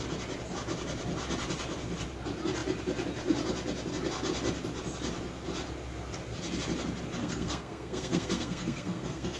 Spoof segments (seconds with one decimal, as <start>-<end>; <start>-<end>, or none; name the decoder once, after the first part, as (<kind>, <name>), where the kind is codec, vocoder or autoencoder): 7.2-9.4 (codec, SNAC)